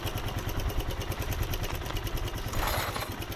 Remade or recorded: recorded